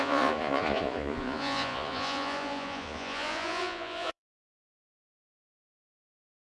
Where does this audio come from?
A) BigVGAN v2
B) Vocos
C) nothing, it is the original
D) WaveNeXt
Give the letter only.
B